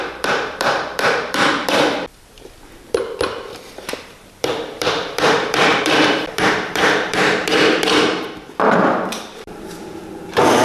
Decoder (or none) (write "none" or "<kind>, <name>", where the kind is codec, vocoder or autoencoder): vocoder, BigVGAN v2